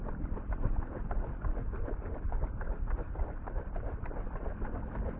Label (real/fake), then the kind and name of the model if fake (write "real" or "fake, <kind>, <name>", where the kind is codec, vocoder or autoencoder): real